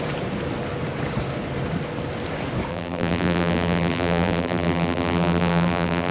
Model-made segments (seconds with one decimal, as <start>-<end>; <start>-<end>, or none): 2.7-6.1